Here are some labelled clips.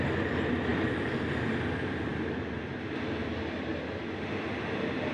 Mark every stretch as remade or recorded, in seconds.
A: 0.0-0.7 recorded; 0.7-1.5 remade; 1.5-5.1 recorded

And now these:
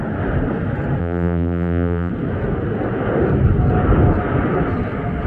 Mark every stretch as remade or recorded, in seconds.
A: 0.0-1.0 recorded; 1.0-2.1 remade; 2.1-5.3 recorded

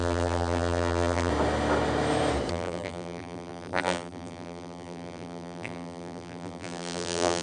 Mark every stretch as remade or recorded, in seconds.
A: 0.0-1.3 remade; 1.3-2.5 recorded; 2.5-7.4 remade

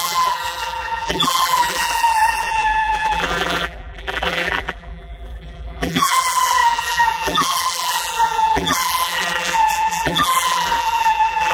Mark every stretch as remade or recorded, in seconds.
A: 0.0-11.5 remade

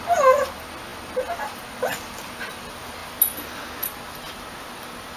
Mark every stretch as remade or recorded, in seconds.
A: 0.0-5.2 recorded

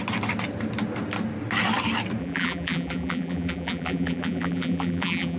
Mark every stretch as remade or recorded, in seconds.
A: 0.0-2.2 recorded; 2.2-5.4 remade